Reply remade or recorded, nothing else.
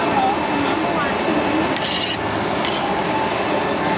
recorded